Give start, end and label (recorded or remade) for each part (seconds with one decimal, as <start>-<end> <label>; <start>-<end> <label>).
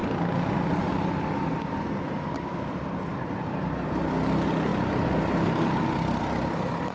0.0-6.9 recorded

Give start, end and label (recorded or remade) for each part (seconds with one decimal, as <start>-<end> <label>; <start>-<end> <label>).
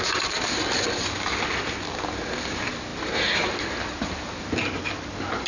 0.0-5.5 recorded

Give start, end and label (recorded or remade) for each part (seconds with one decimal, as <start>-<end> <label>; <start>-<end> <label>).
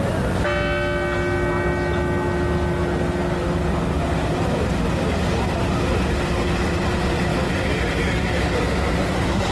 0.0-9.5 recorded